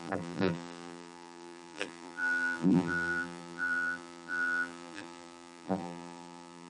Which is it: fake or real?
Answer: fake